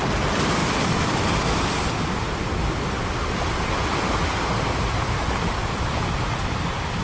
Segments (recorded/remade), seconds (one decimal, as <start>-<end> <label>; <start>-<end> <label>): 0.0-7.0 recorded